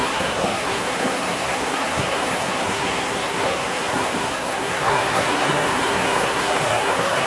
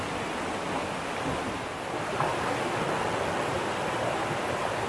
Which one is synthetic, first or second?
first